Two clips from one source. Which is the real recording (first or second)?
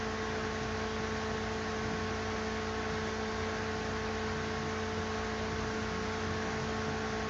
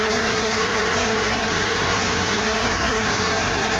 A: first